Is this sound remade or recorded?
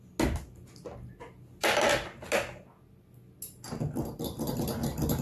recorded